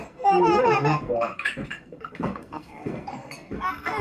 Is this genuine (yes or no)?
no